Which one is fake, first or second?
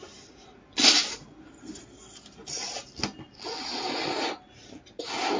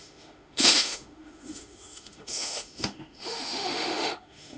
second